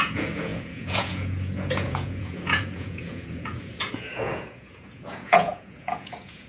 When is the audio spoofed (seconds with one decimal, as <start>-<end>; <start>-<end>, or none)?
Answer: 0.0-6.5